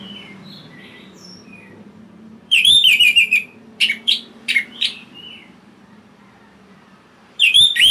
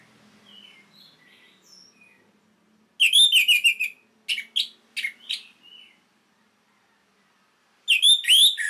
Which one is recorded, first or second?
second